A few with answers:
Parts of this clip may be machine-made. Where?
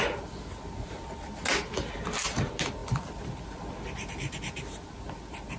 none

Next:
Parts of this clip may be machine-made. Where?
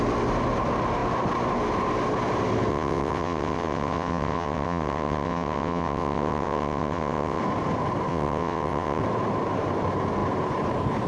2.7-7.4 (vocoder, WaveNeXt); 8.1-9.0